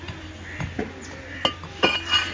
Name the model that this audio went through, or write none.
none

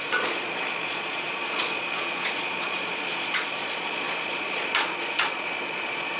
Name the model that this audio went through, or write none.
vocoder, Vocos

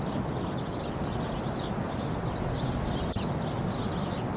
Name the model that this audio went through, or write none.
none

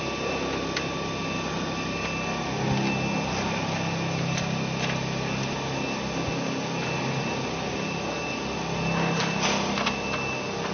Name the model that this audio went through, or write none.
none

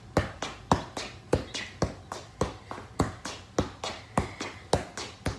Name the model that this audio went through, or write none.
none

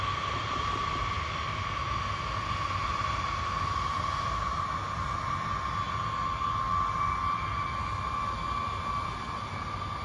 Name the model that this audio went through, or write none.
none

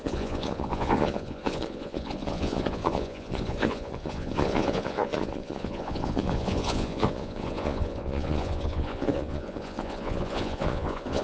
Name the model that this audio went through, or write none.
vocoder, Vocos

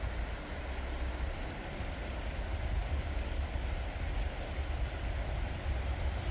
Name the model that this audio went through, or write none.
none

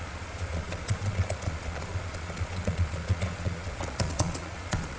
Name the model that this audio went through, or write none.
vocoder, Vocos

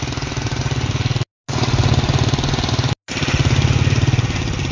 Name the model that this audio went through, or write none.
none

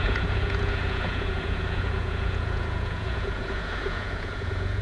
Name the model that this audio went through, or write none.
vocoder, Vocos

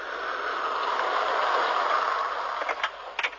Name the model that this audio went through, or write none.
none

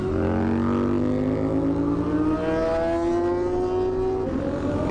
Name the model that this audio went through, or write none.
none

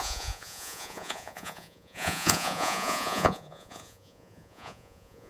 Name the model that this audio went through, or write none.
vocoder, Vocos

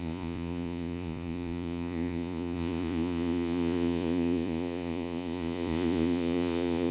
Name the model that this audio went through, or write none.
vocoder, Vocos